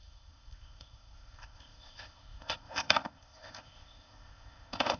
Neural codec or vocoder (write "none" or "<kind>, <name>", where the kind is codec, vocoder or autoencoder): codec, ZipCodec